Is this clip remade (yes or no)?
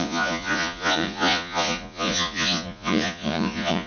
yes